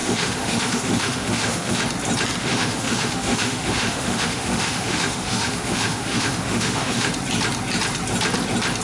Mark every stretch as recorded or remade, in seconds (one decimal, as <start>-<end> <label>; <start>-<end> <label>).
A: 0.0-1.8 remade; 1.8-2.4 recorded; 2.4-7.1 remade; 7.1-8.8 recorded